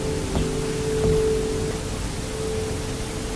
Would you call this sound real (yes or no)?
yes